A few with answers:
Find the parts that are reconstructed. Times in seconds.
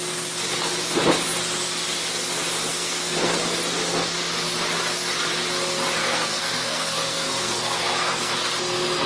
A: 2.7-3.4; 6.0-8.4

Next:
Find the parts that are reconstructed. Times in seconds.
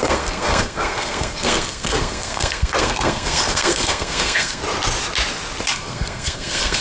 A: 0.0-4.6; 5.7-6.8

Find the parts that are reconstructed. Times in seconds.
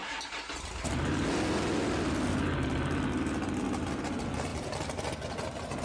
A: none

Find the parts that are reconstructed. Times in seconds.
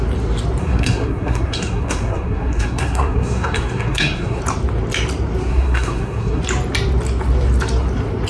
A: 0.6-4.4; 5.5-6.4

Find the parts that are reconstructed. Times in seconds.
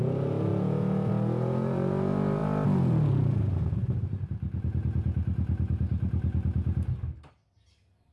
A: none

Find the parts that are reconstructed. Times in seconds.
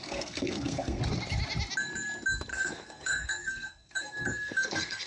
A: 0.0-1.0; 2.5-5.1